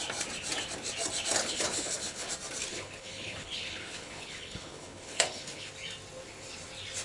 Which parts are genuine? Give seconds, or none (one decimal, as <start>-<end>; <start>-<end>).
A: 0.0-1.4; 2.3-2.7; 5.7-7.0